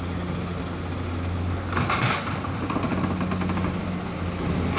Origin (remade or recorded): recorded